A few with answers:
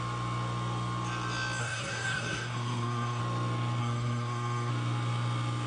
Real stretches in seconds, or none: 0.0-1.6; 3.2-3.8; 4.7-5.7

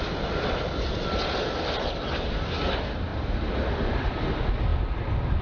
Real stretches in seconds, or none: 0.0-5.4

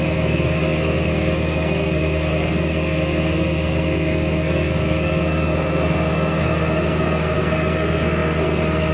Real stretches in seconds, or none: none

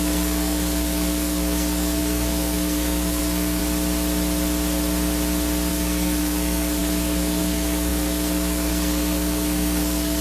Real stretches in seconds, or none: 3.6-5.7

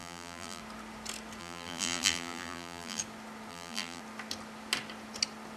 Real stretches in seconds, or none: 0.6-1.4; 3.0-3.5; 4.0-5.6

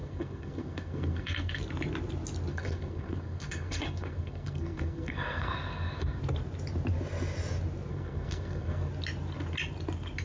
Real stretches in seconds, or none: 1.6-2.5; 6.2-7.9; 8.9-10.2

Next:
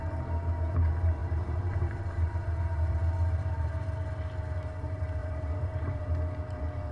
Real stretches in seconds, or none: 0.0-1.2; 3.7-5.2; 6.1-6.9